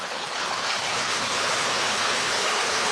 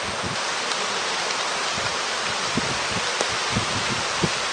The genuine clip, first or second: second